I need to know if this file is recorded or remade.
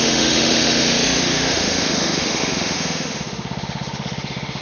remade